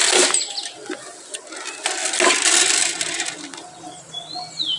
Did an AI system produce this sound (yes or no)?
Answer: no